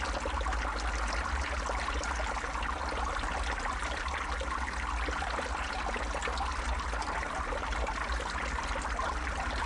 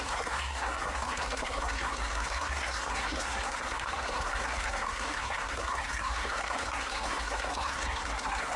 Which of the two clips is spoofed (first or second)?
second